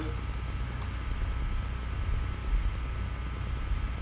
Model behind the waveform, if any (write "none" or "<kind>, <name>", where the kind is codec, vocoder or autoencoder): none